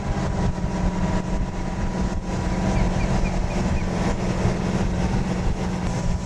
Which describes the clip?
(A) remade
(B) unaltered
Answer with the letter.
B